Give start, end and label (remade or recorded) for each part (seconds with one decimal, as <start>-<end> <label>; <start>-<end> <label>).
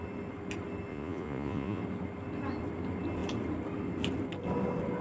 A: 0.0-0.9 recorded; 0.9-1.8 remade; 1.8-5.0 recorded